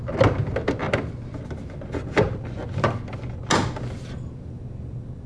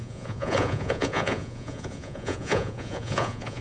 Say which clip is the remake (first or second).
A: second